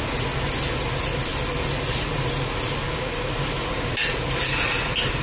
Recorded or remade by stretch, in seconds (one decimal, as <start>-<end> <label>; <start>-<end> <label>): 0.0-5.2 recorded